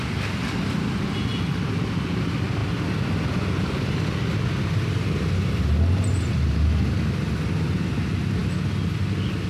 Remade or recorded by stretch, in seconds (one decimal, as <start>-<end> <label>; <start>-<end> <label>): 0.0-9.5 recorded

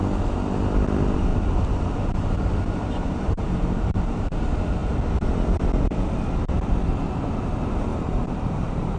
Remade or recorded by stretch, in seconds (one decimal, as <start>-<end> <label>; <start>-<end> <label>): 0.0-1.3 recorded; 1.3-4.3 remade; 4.3-7.9 recorded; 7.9-9.0 remade

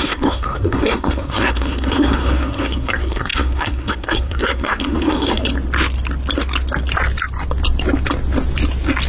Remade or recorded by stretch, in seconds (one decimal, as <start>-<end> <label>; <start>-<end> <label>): 0.0-5.5 remade; 5.5-9.1 recorded

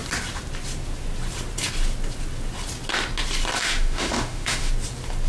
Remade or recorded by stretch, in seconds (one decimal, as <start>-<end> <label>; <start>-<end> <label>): 0.0-3.6 recorded; 3.6-4.7 remade; 4.7-5.3 recorded

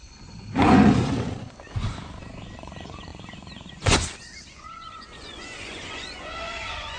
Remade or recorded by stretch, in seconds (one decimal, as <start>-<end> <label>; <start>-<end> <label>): 0.0-7.0 remade

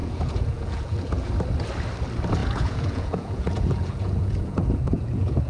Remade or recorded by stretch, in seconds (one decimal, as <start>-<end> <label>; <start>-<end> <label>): 0.0-1.3 remade; 1.3-2.4 recorded; 2.4-5.5 remade

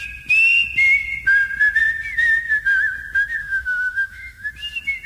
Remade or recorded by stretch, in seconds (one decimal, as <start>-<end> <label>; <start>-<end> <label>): 0.0-3.4 recorded; 3.4-4.5 remade; 4.5-5.1 recorded

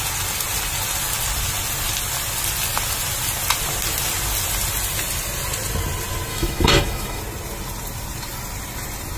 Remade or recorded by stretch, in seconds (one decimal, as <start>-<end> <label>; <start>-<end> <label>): 0.0-6.3 recorded; 6.3-7.2 remade; 7.2-9.2 recorded